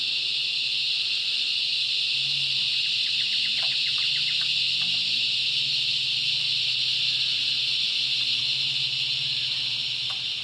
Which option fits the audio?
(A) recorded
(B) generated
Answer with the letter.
A